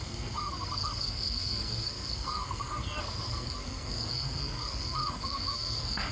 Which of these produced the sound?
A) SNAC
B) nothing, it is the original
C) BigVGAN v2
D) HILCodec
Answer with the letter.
A